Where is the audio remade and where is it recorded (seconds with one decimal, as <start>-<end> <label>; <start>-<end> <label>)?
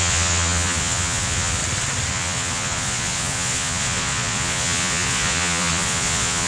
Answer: 0.0-1.6 remade; 1.6-2.1 recorded; 2.1-6.5 remade